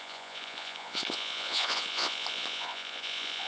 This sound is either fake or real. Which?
fake